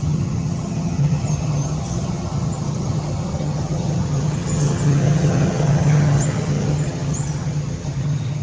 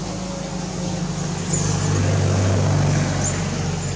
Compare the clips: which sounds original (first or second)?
second